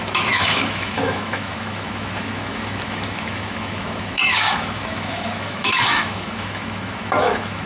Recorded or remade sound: remade